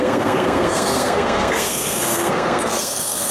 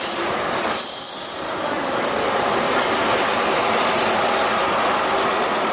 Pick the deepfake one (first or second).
first